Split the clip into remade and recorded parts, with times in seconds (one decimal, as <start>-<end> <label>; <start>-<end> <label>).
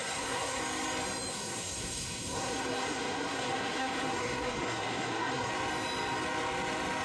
0.0-0.6 remade; 0.6-1.3 recorded; 1.3-5.5 remade; 5.5-7.0 recorded